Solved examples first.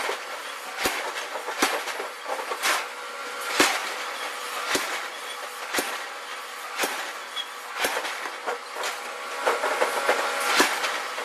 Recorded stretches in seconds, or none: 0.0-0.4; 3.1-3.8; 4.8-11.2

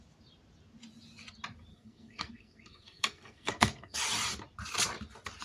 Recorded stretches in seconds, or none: 0.0-1.7; 4.0-5.4

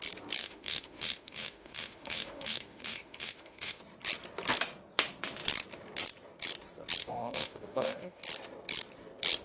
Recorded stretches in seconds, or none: 0.0-0.4; 3.8-7.0; 8.2-9.4

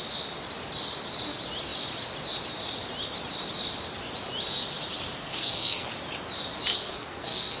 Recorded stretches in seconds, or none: 0.0-5.2; 5.9-6.7

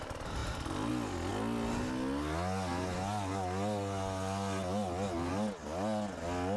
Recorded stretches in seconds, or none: 0.0-0.4; 0.9-6.6